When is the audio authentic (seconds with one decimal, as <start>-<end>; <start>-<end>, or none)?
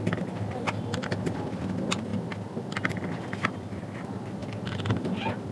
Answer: 0.0-5.5